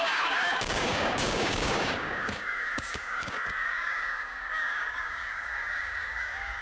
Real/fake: fake